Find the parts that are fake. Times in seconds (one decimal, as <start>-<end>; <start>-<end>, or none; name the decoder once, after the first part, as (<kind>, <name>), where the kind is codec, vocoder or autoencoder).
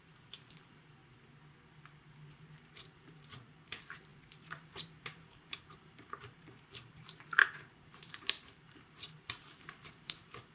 0.0-1.0 (vocoder, BigVGAN v2); 2.4-10.5